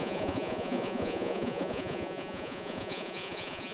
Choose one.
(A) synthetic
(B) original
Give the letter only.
A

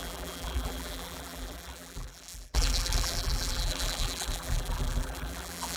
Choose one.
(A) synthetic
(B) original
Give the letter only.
A